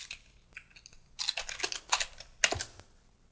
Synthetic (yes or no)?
no